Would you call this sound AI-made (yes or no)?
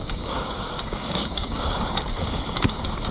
yes